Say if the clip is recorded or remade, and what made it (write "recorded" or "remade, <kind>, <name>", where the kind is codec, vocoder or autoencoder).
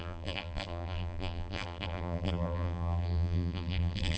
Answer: remade, vocoder, BigVGAN v2